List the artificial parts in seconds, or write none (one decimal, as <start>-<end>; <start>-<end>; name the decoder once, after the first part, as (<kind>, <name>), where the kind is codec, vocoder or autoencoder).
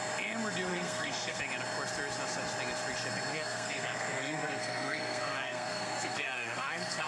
0.7-1.4 (codec, SNAC); 3.3-7.1